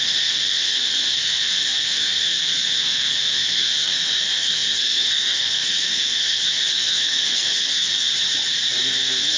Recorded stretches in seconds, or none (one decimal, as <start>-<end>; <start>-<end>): 8.1-8.8

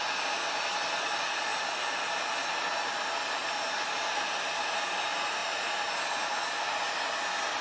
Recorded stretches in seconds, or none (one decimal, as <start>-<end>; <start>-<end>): 0.0-7.6

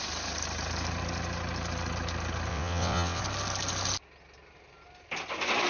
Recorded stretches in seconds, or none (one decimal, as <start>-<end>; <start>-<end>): 0.0-2.5; 3.2-5.7

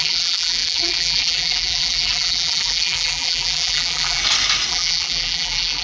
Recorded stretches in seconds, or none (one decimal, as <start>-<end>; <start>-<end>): 4.2-4.7

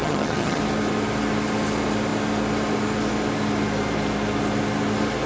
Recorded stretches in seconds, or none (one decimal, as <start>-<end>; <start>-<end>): 0.6-5.3

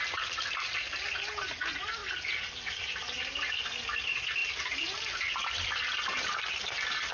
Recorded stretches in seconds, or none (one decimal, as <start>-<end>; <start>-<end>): 0.0-7.1